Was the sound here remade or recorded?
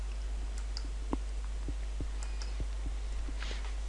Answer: recorded